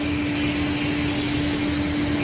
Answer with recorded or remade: recorded